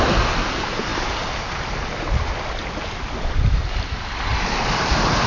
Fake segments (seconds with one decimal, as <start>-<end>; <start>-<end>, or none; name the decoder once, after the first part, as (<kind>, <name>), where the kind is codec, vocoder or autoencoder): none